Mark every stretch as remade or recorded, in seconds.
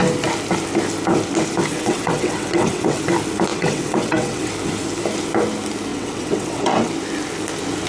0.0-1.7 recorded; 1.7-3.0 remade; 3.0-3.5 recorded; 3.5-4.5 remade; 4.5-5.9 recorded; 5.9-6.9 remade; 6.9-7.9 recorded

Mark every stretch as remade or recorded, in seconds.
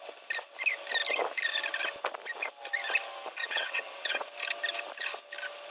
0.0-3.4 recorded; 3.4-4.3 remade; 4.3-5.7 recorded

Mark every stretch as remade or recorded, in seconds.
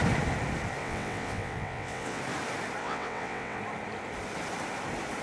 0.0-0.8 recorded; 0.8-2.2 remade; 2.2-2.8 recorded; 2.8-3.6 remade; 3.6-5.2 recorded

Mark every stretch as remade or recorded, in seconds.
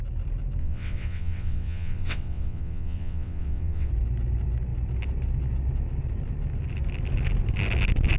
0.0-0.6 recorded; 0.6-3.9 remade; 3.9-8.2 recorded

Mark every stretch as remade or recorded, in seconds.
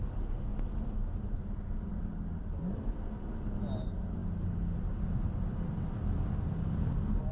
0.0-7.3 recorded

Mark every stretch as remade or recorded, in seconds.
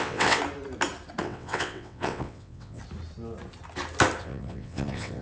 0.0-0.4 remade; 0.4-1.2 recorded; 1.2-2.8 remade; 2.8-4.2 recorded; 4.2-5.2 remade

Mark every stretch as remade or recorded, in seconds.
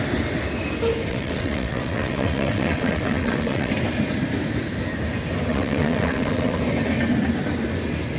0.0-1.1 recorded; 1.1-3.7 remade; 3.7-5.5 recorded; 5.5-6.6 remade; 6.6-8.2 recorded